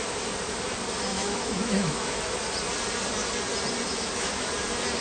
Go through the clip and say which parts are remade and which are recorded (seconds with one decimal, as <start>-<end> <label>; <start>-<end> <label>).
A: 0.0-1.1 recorded; 1.1-2.2 remade; 2.2-3.9 recorded; 3.9-4.5 remade; 4.5-5.0 recorded